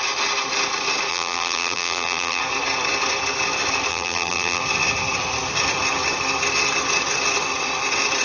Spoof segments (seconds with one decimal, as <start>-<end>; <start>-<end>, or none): 1.1-2.4; 3.9-4.6